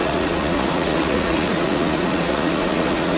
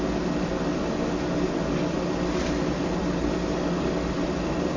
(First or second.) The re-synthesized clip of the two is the first